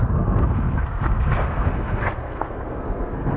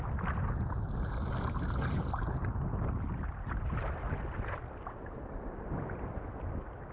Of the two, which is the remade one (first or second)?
first